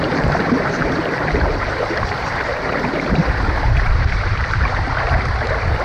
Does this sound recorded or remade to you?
remade